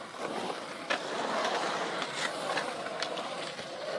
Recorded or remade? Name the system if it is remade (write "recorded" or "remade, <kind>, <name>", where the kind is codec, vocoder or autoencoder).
recorded